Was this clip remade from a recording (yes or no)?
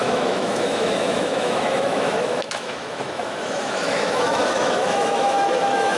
yes